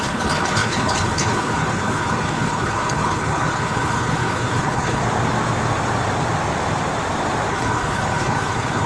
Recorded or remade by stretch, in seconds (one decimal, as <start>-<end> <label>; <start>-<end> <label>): 0.0-5.0 remade; 5.0-7.5 recorded; 7.5-8.9 remade